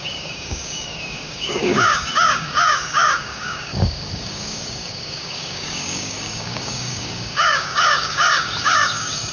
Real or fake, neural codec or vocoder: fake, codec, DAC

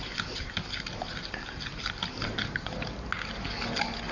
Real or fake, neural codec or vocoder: real